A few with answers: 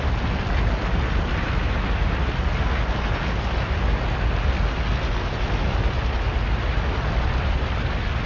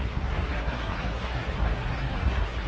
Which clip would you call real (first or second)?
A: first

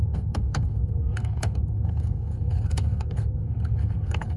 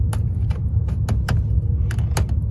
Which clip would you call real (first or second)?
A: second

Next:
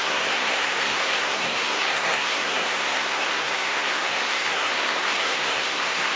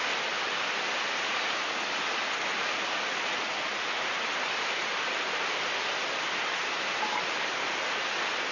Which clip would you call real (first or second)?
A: second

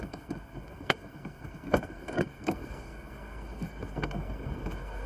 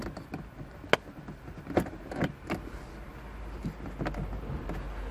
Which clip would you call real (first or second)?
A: second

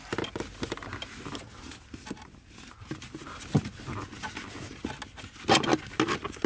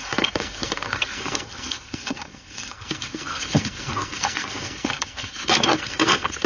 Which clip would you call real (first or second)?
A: first